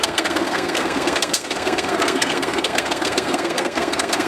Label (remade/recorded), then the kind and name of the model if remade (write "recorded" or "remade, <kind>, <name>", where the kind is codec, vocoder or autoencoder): remade, codec, SNAC